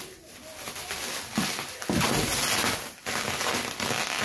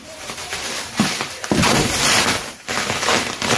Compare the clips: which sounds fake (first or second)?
second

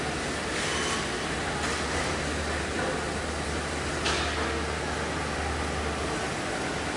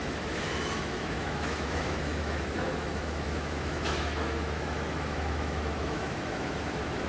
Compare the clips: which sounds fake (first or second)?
second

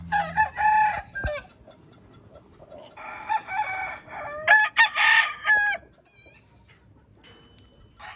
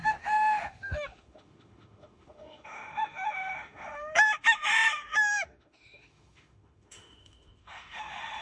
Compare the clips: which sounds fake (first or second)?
second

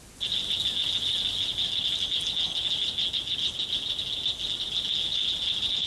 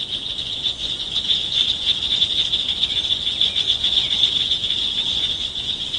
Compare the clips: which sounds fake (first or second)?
second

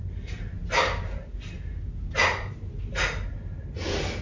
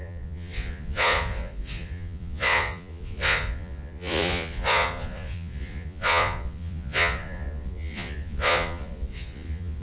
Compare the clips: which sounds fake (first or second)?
second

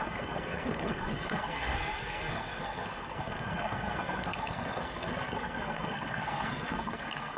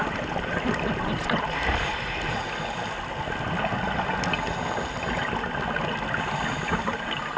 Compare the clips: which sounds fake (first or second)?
first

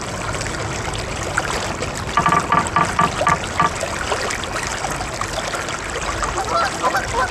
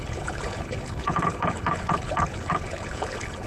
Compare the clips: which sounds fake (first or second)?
second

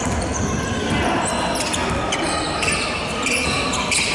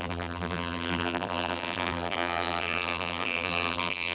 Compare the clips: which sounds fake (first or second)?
second